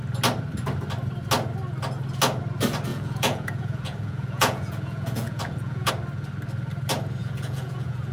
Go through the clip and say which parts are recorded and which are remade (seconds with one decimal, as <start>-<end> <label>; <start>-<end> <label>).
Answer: 0.0-2.9 recorded; 2.9-5.9 remade; 5.9-7.2 recorded; 7.2-8.1 remade